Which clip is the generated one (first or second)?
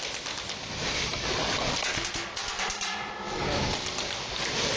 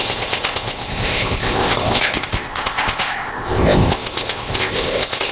second